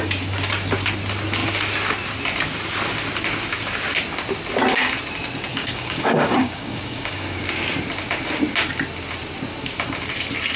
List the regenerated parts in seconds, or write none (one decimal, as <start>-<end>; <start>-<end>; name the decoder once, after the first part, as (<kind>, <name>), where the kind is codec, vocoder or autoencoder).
5.5-7.4 (codec, DAC)